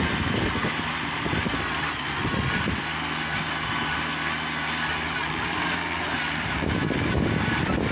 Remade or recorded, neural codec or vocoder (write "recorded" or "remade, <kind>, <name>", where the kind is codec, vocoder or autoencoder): recorded